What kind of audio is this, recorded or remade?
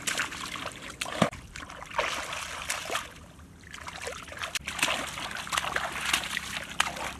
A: recorded